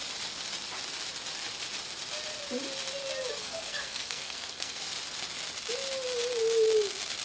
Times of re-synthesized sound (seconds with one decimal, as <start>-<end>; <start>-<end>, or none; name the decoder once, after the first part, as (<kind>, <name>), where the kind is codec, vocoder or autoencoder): 3.4-4.8 (codec, SNAC)